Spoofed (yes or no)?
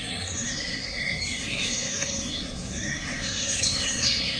yes